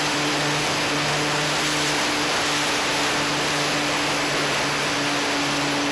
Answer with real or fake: real